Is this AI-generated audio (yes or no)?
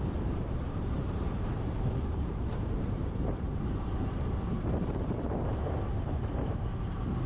yes